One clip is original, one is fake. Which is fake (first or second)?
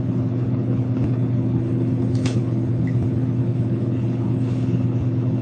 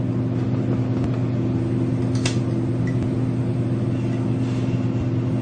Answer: first